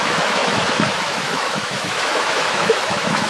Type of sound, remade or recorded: remade